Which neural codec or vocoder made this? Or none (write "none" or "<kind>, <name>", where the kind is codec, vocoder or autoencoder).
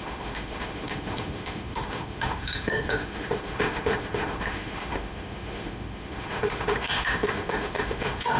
autoencoder, DAC-VAE